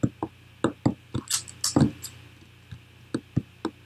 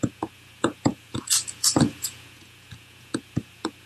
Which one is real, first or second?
first